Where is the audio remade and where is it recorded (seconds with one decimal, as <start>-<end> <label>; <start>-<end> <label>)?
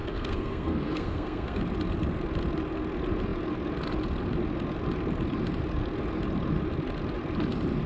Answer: 0.0-1.6 remade; 1.6-7.9 recorded